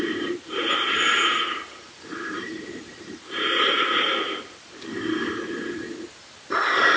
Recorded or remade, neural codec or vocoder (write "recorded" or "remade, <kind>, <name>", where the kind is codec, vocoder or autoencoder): remade, vocoder, BigVGAN v2